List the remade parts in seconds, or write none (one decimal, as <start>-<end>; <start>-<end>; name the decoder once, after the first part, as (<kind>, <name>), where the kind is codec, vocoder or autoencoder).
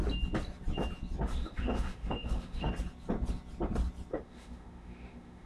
1.3-2.7 (autoencoder, DAC-VAE); 4.1-5.5